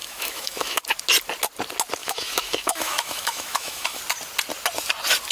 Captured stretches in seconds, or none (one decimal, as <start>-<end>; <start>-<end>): 0.8-2.0; 4.0-5.3